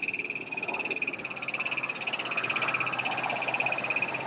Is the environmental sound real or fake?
real